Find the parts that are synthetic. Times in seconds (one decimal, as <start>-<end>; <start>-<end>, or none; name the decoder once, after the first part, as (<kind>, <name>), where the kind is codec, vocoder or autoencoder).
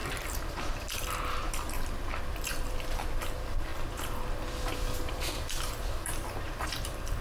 0.0-3.7 (vocoder, BigVGAN v2); 5.1-7.2